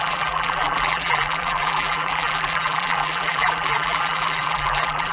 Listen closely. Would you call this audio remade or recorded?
remade